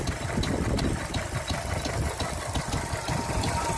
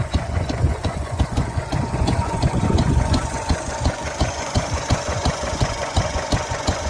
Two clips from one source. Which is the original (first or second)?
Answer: first